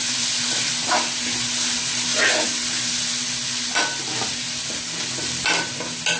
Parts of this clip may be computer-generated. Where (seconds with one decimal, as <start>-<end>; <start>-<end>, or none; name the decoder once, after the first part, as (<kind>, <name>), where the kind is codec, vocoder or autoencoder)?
none